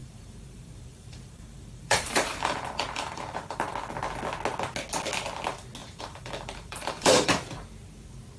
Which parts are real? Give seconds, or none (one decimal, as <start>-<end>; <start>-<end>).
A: 3.7-5.8; 7.3-8.4